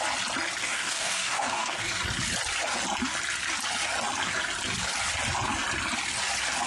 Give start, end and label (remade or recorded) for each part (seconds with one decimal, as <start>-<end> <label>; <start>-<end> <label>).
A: 0.0-0.6 recorded; 0.6-2.0 remade; 2.0-6.7 recorded